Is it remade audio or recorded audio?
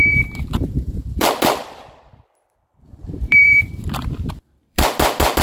remade